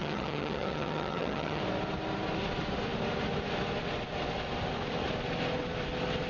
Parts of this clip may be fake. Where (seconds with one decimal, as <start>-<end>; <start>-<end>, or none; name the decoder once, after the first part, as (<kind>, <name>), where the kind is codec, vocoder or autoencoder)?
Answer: 0.0-1.6 (vocoder, HiFi-GAN)